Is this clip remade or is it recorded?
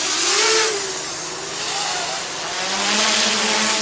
recorded